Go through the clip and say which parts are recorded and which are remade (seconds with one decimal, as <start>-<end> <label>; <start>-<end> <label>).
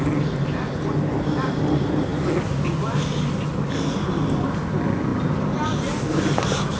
0.0-6.8 recorded